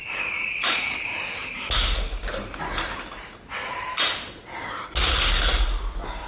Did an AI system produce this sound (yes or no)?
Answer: no